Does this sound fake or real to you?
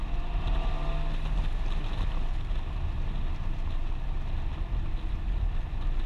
real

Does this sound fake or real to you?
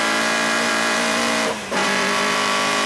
fake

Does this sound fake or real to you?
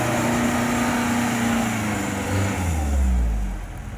real